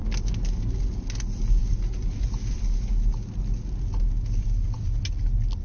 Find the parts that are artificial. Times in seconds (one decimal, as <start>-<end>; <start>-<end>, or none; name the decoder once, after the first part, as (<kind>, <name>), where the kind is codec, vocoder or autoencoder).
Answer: none